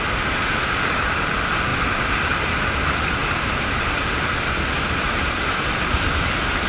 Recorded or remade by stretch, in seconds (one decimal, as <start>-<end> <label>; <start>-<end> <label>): 0.0-6.7 recorded